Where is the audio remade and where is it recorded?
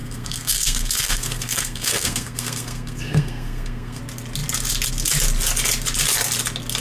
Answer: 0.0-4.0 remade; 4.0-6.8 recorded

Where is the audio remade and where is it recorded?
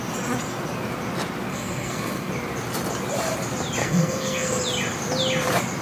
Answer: 0.0-1.5 recorded; 1.5-2.3 remade; 2.3-3.8 recorded; 3.8-4.6 remade; 4.6-5.8 recorded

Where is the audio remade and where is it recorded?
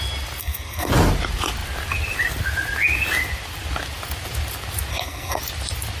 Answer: 0.0-0.4 recorded; 0.4-0.9 remade; 0.9-4.9 recorded; 4.9-5.4 remade; 5.4-6.0 recorded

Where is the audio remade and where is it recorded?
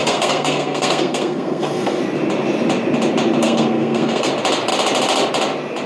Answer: 0.0-2.0 remade; 2.0-3.4 recorded; 3.4-4.3 remade; 4.3-5.9 recorded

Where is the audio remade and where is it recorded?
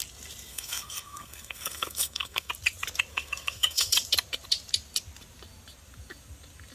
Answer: 0.0-0.5 recorded; 0.5-2.5 remade; 2.5-3.1 recorded; 3.1-3.9 remade; 3.9-6.7 recorded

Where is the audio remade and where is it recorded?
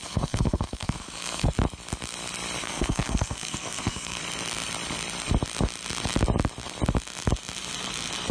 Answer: 0.0-1.5 remade; 1.5-2.6 recorded; 2.6-4.2 remade; 4.2-8.3 recorded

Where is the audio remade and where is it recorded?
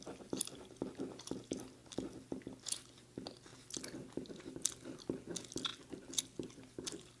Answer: 0.0-7.2 recorded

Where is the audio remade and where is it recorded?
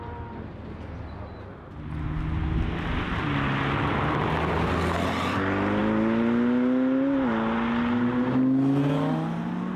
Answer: 0.0-9.8 recorded